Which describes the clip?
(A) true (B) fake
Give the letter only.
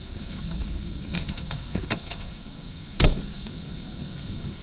B